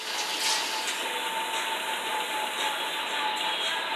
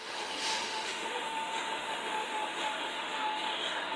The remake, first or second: second